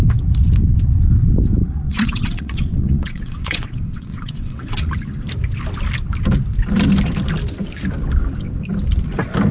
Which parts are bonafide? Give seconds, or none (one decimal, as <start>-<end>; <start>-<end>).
0.0-1.6; 4.9-9.5